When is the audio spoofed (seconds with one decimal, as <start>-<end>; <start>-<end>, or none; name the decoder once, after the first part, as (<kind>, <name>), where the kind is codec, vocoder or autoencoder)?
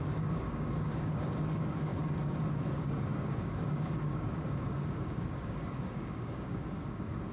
0.0-7.3 (codec, DAC)